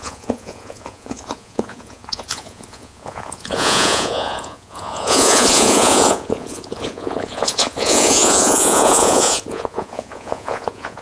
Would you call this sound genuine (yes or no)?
no